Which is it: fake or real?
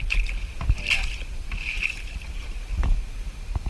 real